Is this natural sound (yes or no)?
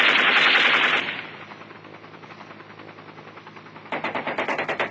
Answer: yes